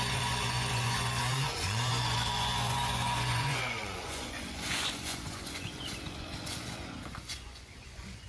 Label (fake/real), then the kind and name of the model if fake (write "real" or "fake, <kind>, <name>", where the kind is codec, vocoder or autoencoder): fake, vocoder, Vocos